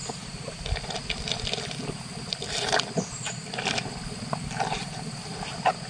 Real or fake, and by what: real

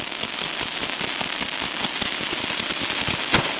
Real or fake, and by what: real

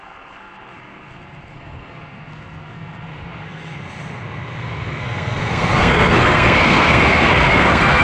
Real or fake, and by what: fake, codec, SNAC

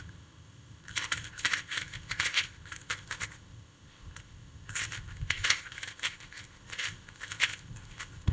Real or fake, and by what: fake, codec, ZipCodec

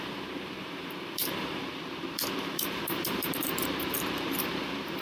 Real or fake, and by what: fake, vocoder, BigVGAN v2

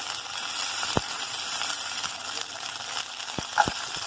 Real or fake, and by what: real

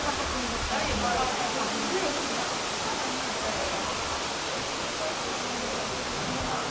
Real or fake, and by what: real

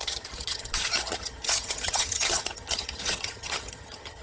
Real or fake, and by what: fake, vocoder, HiFi-GAN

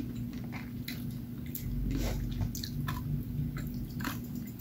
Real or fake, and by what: real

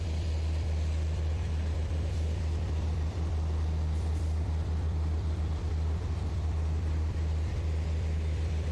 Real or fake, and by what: fake, vocoder, BigVGAN v2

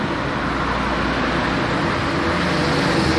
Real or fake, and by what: real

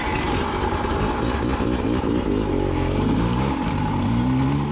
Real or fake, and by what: real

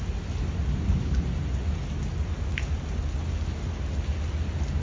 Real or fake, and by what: real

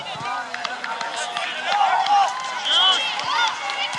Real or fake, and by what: real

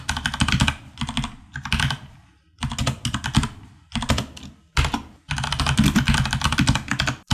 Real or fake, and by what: real